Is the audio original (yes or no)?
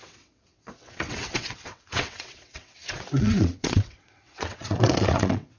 no